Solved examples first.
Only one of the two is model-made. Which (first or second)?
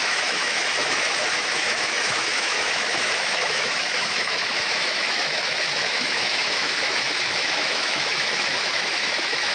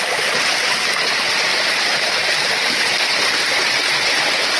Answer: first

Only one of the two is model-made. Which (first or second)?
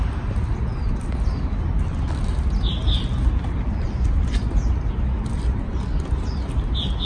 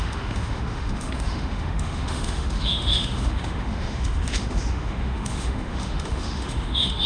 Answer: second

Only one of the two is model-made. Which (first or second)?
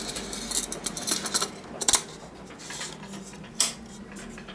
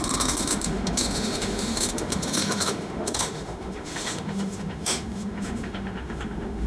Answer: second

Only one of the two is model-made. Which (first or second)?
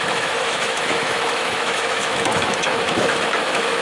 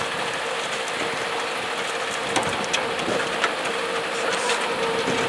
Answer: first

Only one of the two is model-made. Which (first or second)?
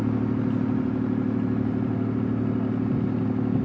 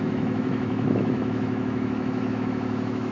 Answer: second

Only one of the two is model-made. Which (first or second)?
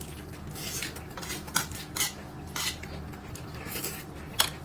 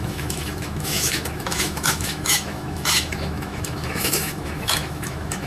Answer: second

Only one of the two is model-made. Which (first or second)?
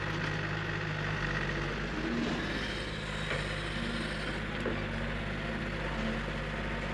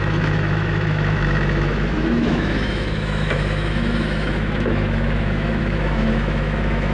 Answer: second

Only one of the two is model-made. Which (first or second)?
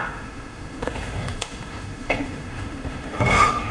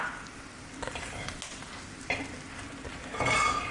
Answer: first